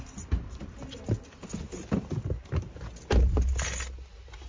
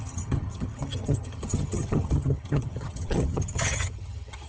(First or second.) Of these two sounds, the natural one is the first